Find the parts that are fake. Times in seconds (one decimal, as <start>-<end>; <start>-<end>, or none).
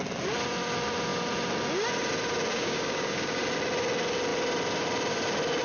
2.5-3.4